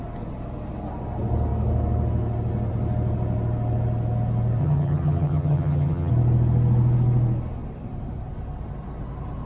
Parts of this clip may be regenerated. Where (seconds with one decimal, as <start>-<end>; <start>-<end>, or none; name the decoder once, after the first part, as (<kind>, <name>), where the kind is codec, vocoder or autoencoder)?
4.6-6.1 (vocoder, HiFi-GAN)